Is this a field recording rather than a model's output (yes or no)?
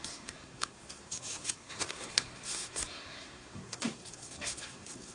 no